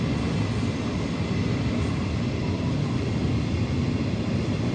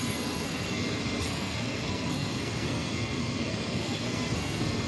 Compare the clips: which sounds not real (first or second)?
second